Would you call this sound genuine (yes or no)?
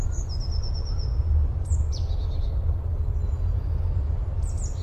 yes